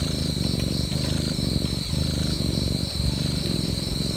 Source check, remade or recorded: recorded